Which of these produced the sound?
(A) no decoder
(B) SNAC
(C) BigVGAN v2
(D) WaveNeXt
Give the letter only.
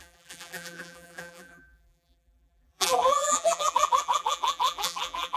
C